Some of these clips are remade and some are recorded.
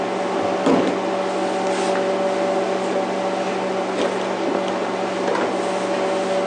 recorded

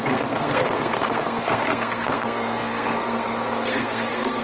remade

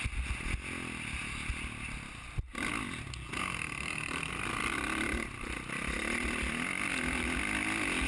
recorded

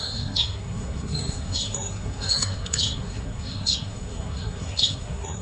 remade